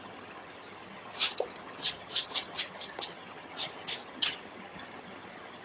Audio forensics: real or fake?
fake